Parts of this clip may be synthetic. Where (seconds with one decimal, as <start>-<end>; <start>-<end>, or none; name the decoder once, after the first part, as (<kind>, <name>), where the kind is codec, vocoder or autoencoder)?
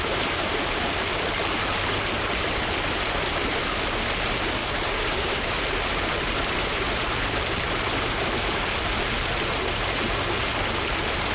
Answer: 4.6-5.6 (codec, DAC)